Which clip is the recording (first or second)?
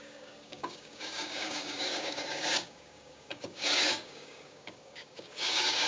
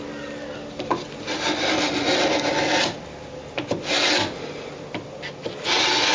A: second